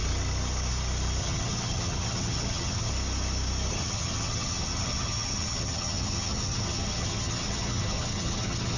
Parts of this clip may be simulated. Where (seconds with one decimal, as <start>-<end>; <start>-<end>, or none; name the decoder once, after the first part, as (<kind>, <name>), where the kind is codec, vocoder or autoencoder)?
1.2-2.9 (vocoder, HiFi-GAN); 3.7-8.8